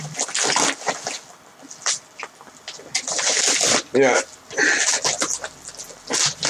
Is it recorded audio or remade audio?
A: recorded